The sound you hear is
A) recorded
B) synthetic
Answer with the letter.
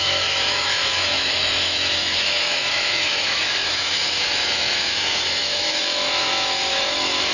B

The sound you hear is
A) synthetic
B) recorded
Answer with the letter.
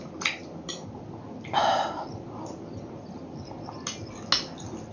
B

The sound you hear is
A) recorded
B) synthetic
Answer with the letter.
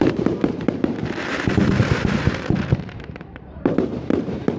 B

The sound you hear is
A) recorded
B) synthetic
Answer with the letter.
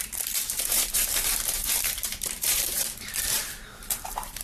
B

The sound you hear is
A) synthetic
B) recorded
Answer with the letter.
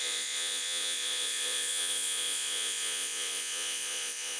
A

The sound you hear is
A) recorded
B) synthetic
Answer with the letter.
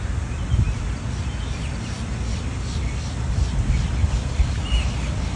A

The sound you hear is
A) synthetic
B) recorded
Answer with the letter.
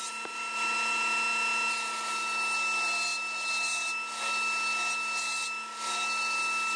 B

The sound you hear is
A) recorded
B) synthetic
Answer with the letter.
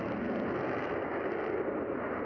A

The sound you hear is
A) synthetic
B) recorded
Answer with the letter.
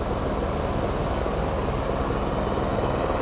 B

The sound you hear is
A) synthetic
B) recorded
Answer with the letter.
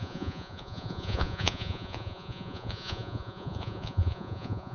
A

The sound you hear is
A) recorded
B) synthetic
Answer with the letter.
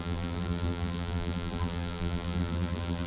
B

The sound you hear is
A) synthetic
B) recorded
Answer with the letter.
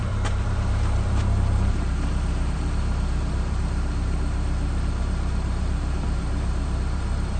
A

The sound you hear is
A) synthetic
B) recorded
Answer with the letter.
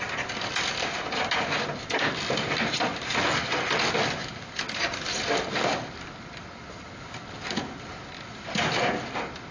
B